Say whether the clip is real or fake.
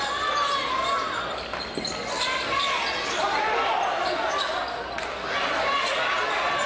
real